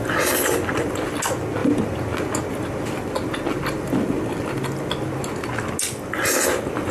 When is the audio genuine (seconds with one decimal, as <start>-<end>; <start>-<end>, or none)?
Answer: 0.0-6.9